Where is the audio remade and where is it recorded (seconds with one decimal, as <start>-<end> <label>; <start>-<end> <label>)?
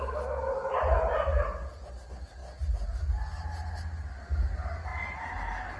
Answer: 0.0-5.8 recorded